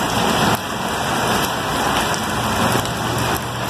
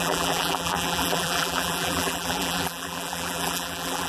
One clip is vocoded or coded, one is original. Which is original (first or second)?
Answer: first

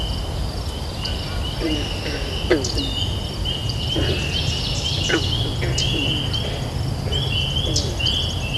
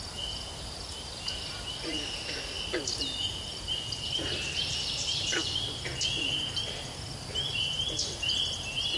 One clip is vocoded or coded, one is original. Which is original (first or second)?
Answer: first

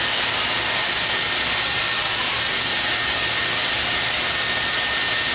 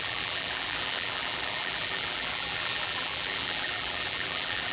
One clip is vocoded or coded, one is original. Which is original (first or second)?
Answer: first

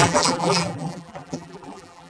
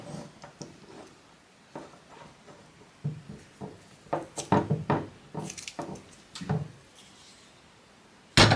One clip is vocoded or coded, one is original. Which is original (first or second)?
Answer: second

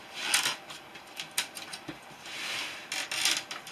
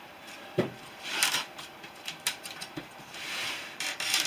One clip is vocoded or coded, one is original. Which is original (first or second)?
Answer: first